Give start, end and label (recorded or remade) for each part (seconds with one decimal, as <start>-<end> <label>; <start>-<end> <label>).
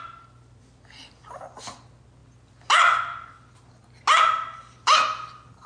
0.0-5.7 recorded